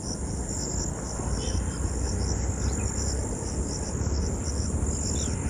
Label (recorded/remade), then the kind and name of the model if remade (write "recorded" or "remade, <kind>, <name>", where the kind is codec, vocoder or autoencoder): recorded